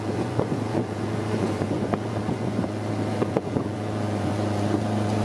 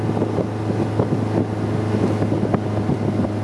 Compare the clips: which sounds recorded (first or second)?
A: second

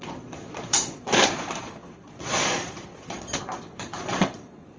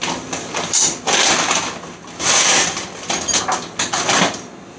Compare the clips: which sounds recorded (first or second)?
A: second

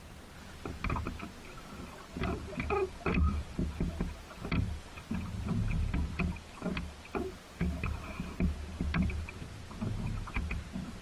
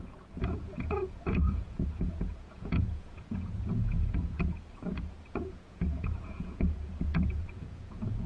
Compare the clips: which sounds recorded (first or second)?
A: first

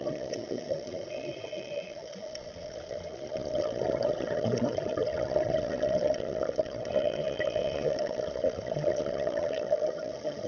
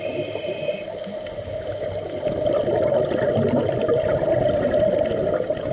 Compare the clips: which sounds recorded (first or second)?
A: second